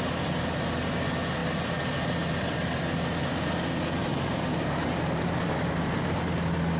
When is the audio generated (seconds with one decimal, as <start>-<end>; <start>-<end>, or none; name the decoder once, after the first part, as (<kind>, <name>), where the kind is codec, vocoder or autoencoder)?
4.0-6.0 (vocoder, BigVGAN v2)

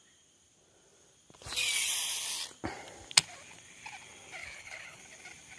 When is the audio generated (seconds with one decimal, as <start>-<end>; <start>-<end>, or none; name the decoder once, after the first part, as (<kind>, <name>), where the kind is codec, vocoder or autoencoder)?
4.4-5.0 (codec, HILCodec)

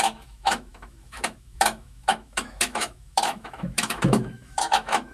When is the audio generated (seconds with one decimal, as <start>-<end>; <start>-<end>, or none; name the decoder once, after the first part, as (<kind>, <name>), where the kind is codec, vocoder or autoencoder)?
0.0-5.1 (autoencoder, DAC-VAE)

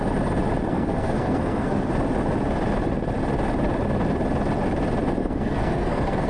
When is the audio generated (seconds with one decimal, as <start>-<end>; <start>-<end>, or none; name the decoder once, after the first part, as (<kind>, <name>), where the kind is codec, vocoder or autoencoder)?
0.7-1.9 (codec, SNAC); 5.2-6.3

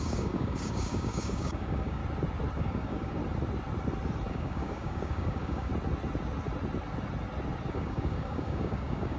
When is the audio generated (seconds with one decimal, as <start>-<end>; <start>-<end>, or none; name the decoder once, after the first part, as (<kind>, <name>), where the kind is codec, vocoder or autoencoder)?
0.0-2.0 (codec, DAC); 2.6-3.2; 4.3-5.7; 7.7-9.2